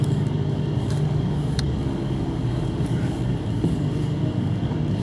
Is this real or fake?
fake